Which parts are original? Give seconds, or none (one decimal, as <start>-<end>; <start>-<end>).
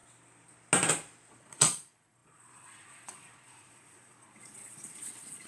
0.0-1.3